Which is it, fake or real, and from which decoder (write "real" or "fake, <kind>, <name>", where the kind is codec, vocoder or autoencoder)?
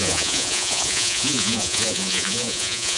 fake, vocoder, Vocos